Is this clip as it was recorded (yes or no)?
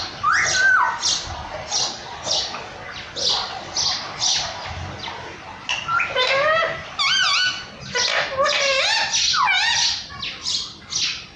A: yes